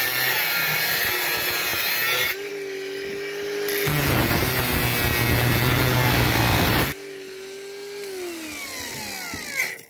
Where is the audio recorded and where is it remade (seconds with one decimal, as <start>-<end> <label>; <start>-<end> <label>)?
0.0-9.9 recorded